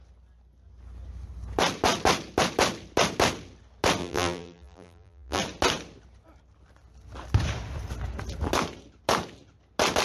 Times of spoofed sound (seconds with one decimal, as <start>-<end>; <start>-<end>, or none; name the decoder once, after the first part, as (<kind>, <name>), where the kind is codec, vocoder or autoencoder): 4.0-5.4 (vocoder, BigVGAN v2)